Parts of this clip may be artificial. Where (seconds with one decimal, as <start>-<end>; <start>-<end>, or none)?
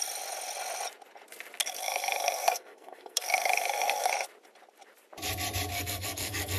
1.6-4.1; 5.7-6.6